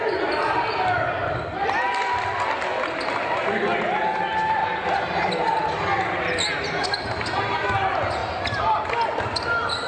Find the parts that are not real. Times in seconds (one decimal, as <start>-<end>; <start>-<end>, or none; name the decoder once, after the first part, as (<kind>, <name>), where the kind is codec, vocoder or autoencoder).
none

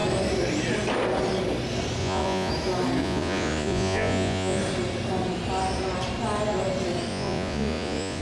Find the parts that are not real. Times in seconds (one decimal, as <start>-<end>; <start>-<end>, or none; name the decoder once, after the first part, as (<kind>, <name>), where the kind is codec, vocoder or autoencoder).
2.0-2.5 (vocoder, Vocos); 3.0-4.6; 7.1-8.2

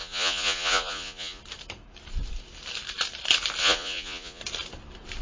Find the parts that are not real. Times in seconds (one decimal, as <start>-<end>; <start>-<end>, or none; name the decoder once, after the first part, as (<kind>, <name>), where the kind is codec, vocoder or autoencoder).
0.0-1.4 (vocoder, Vocos); 3.6-4.4

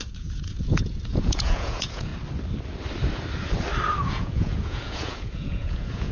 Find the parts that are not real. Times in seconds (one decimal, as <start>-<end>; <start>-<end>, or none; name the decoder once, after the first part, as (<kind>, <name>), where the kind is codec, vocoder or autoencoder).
0.0-2.1 (vocoder, Vocos); 4.1-6.1

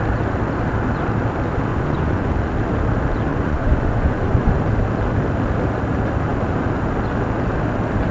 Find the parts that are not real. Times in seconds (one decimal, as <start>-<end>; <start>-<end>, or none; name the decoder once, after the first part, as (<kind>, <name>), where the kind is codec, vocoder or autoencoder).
1.7-2.3 (vocoder, Vocos); 3.3-4.5

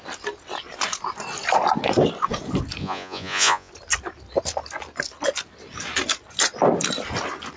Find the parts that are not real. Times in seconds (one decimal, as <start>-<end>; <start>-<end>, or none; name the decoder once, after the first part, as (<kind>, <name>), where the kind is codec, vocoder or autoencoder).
2.8-3.7 (vocoder, Vocos)

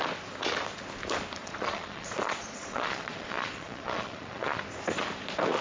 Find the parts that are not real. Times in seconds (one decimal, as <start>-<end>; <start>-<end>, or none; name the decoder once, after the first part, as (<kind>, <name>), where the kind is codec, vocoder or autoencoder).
1.4-4.6 (vocoder, Vocos)